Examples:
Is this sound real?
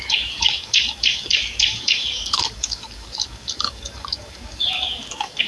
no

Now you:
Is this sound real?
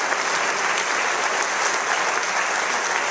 yes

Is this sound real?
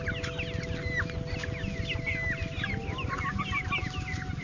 yes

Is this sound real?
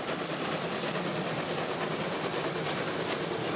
yes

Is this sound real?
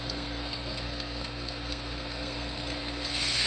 no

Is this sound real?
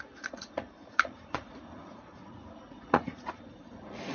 no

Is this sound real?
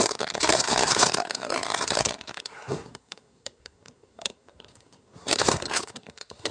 no